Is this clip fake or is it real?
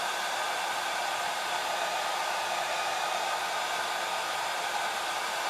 fake